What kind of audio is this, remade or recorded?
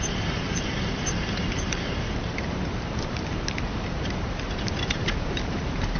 remade